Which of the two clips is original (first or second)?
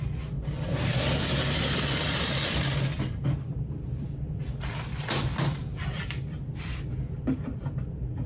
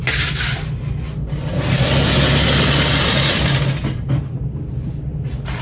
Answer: second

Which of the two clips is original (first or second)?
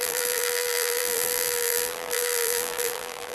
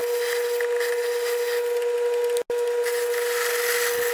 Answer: second